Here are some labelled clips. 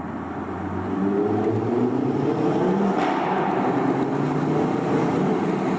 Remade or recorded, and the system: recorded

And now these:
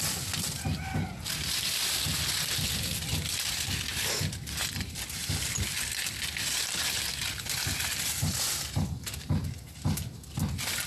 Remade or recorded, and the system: recorded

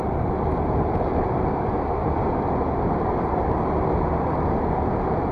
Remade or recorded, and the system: recorded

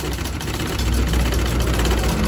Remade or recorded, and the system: recorded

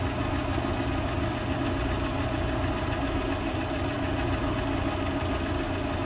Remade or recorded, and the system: recorded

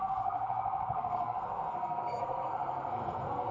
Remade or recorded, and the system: remade, codec, SNAC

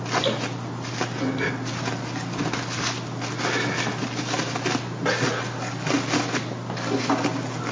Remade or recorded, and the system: recorded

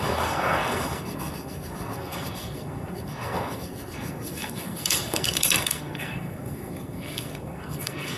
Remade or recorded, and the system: remade, codec, SNAC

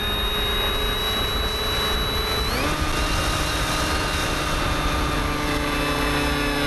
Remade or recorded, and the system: recorded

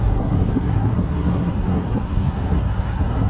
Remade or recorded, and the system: remade, codec, SNAC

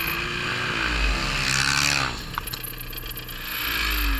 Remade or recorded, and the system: recorded